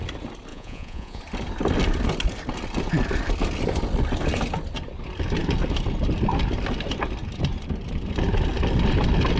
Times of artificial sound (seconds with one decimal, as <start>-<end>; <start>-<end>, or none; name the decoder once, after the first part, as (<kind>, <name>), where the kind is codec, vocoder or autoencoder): 0.5-1.2 (vocoder, Vocos)